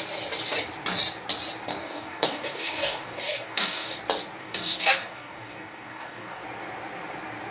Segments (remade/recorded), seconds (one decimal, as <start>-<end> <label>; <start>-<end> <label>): 0.0-1.7 recorded; 1.7-4.0 remade; 4.0-4.4 recorded; 4.4-6.4 remade; 6.4-7.5 recorded